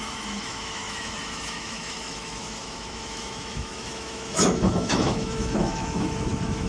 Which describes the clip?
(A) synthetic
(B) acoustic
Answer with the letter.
A